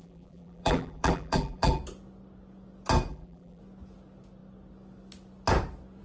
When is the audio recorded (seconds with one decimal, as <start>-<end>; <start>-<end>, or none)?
1.8-3.1; 3.6-6.0